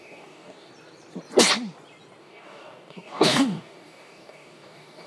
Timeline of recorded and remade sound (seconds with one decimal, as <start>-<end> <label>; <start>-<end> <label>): 0.0-0.7 remade; 0.7-2.2 recorded; 2.2-5.1 remade